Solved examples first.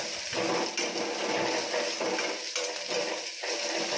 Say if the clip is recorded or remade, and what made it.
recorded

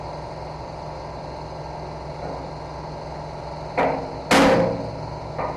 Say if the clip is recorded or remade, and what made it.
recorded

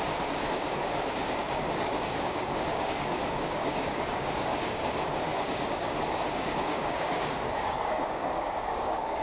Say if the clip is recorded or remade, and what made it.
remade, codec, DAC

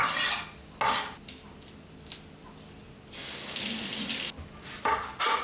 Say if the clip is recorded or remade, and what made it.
recorded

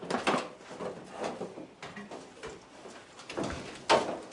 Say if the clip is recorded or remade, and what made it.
recorded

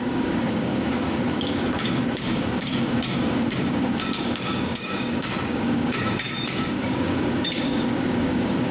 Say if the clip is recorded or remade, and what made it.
remade, codec, DAC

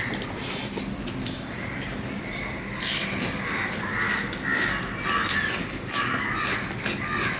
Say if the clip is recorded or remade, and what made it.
recorded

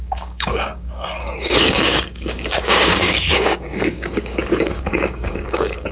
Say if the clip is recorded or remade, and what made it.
remade, codec, DAC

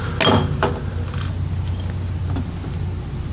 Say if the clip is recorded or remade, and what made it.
recorded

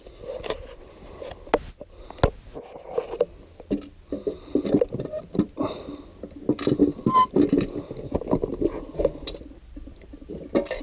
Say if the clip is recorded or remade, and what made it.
recorded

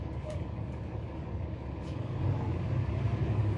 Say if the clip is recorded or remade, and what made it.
remade, codec, DAC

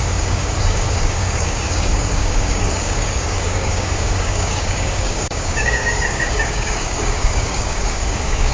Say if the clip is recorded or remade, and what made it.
remade, codec, DAC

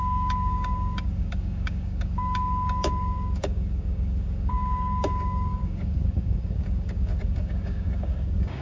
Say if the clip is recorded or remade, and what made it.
remade, codec, DAC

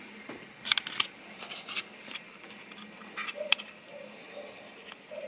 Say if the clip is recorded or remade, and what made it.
recorded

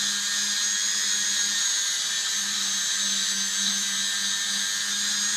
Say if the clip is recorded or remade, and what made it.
recorded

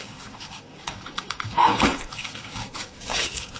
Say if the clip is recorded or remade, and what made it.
remade, codec, DAC